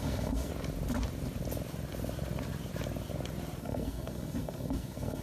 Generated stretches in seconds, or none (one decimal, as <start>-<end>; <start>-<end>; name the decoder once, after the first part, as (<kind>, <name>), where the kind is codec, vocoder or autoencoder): 0.0-0.5 (codec, SNAC); 3.6-5.2